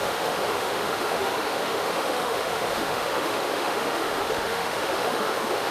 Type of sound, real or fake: fake